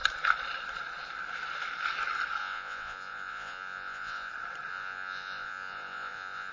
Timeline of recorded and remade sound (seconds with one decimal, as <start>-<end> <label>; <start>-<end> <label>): 0.0-2.4 recorded; 2.4-4.3 remade; 4.3-4.7 recorded; 4.7-6.5 remade